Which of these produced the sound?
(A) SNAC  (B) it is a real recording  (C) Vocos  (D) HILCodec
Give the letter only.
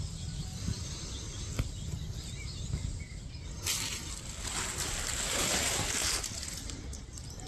B